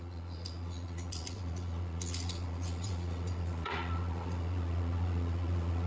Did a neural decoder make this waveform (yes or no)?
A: yes